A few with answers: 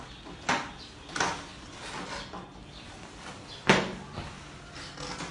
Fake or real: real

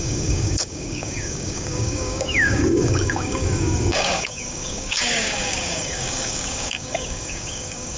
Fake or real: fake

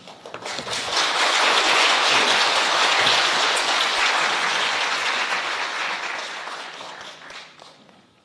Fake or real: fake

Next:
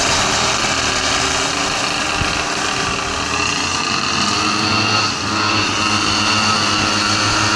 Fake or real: real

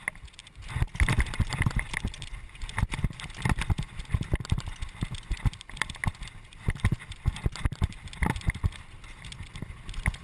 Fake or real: real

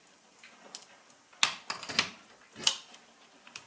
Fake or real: real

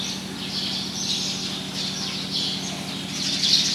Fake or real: real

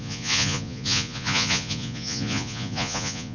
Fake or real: fake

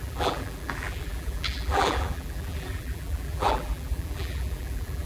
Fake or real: fake